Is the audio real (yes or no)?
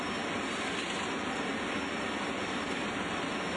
yes